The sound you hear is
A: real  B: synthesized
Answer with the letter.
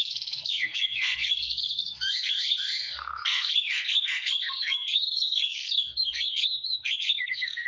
B